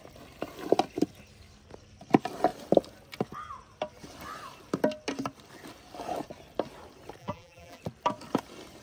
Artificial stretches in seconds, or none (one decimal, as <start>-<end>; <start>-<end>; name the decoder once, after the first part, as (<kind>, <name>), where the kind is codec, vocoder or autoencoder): 7.2-7.8 (vocoder, BigVGAN v2)